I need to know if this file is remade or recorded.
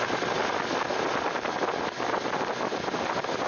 recorded